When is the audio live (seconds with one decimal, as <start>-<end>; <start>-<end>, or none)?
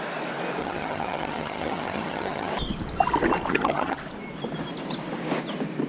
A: 0.0-0.6; 2.5-3.5; 4.0-5.9